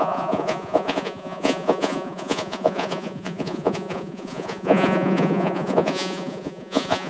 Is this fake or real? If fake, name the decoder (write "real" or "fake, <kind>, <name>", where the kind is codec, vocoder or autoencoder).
fake, vocoder, Vocos